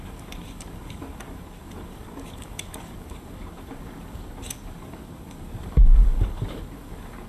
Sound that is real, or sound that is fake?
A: fake